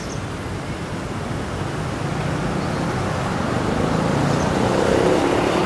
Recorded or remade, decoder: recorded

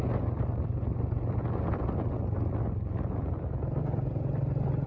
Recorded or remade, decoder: recorded